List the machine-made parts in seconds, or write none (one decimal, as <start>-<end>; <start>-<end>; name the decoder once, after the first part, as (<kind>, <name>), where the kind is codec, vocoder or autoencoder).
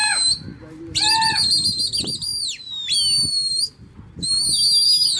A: none